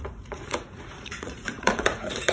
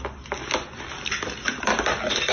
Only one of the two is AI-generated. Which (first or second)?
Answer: first